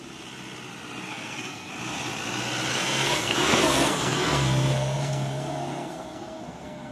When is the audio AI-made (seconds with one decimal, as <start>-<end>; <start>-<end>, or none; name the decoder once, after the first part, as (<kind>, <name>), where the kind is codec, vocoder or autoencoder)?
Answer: 1.1-1.7 (codec, SNAC); 2.7-6.9